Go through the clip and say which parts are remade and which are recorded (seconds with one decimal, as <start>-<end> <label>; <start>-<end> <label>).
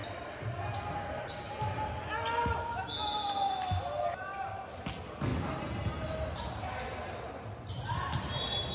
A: 0.0-8.7 recorded